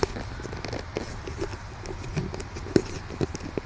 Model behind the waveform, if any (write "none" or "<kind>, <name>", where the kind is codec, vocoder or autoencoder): none